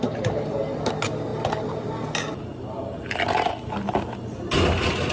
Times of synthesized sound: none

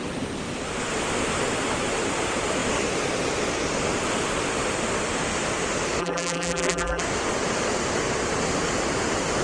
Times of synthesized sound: 6.0-7.0 (vocoder, BigVGAN v2)

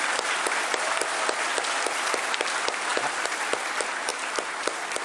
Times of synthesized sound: 2.9-3.6 (vocoder, BigVGAN v2); 4.1-5.0

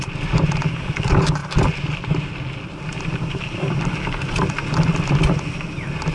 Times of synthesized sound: none